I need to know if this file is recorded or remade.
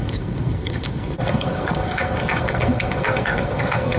remade